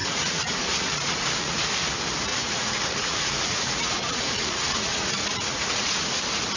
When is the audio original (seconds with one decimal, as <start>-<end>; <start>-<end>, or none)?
1.6-2.3; 6.1-6.6